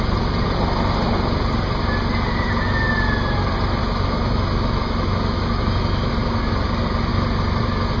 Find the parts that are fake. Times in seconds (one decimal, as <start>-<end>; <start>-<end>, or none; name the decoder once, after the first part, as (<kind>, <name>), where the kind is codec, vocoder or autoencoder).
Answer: 3.8-6.1 (autoencoder, DAC-VAE)